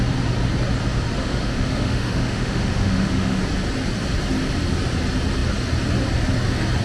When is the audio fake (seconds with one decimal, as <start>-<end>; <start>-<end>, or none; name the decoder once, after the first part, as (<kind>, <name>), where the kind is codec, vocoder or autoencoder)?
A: 1.2-3.4 (autoencoder, DAC-VAE)